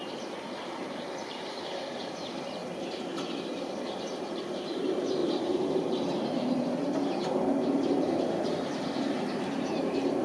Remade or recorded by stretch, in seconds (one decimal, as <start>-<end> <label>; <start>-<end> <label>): 0.0-2.6 remade; 2.6-3.7 recorded; 3.7-5.2 remade; 5.2-7.8 recorded; 7.8-10.2 remade